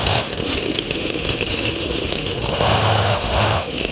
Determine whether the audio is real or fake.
fake